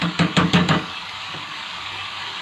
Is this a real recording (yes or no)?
no